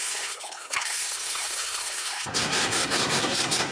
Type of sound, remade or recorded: remade